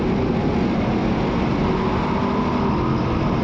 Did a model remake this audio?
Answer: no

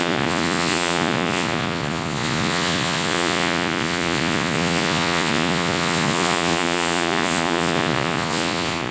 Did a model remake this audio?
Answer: yes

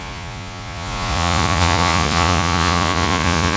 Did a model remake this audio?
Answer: yes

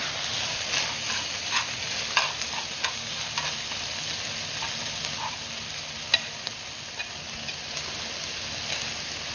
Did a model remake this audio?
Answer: no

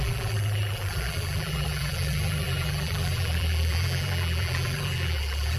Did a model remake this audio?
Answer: yes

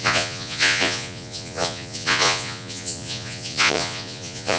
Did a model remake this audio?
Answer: yes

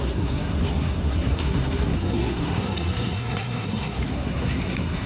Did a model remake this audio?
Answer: yes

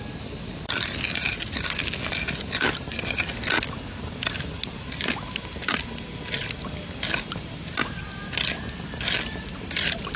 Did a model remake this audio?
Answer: no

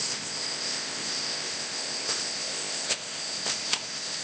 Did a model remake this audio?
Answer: yes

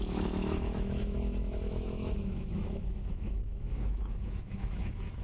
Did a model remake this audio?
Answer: yes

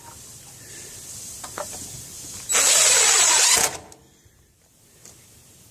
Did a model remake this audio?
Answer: no